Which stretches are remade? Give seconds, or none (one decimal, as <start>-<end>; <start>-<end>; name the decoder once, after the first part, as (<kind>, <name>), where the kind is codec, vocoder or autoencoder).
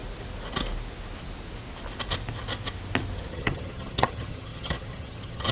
3.3-5.5 (vocoder, HiFi-GAN)